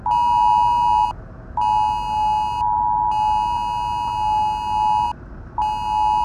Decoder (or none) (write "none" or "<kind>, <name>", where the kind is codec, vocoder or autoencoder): none